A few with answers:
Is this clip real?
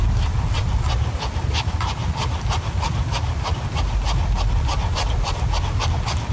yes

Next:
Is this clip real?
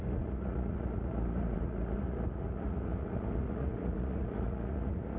no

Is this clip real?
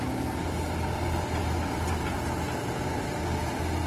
yes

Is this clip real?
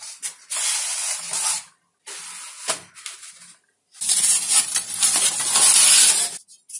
yes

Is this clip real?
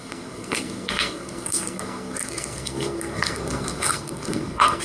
no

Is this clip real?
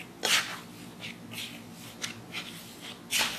yes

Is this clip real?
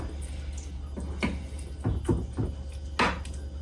yes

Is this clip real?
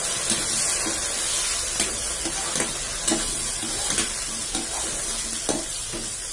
yes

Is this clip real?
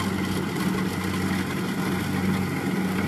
yes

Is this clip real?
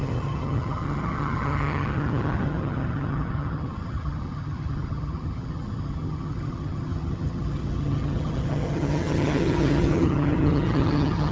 no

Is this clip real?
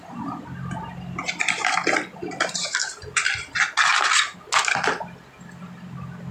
yes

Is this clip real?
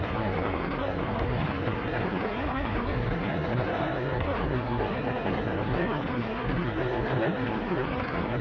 no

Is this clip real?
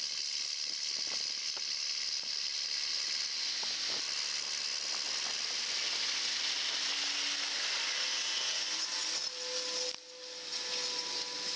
yes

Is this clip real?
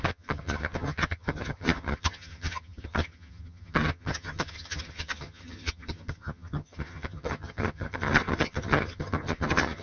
no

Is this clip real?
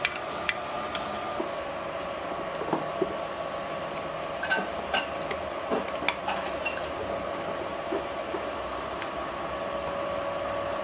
yes